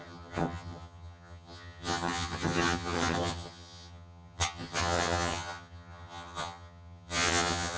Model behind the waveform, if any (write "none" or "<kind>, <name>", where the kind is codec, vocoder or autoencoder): vocoder, HiFi-GAN